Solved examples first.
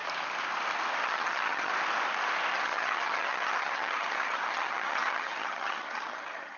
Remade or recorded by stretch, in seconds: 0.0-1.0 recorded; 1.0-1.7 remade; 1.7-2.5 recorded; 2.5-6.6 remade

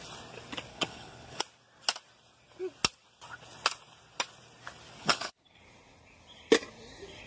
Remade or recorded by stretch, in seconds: 0.0-0.7 recorded; 0.7-1.4 remade; 1.4-5.0 recorded; 5.0-5.6 remade; 5.6-7.3 recorded

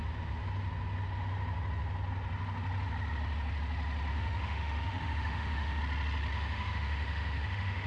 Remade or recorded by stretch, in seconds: 0.0-4.1 recorded; 4.1-5.8 remade; 5.8-6.3 recorded; 6.3-7.9 remade

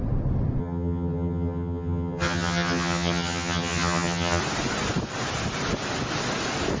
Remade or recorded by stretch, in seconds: 0.0-0.6 recorded; 0.6-4.4 remade; 4.4-6.8 recorded

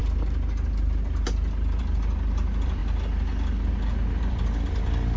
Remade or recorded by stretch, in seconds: 0.0-1.8 recorded; 1.8-2.8 remade; 2.8-4.2 recorded; 4.2-5.2 remade

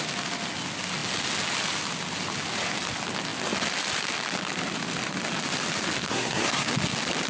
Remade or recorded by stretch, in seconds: 0.0-6.1 recorded; 6.1-6.7 remade; 6.7-7.3 recorded

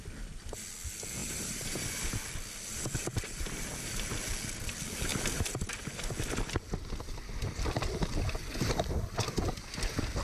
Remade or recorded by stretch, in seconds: 0.0-1.2 recorded; 1.2-2.1 remade; 2.1-7.4 recorded; 7.4-8.1 remade; 8.1-10.2 recorded